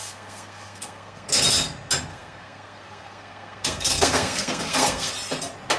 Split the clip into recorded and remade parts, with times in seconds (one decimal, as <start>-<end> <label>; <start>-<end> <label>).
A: 0.0-1.4 remade; 1.4-2.1 recorded; 2.1-5.1 remade; 5.1-5.8 recorded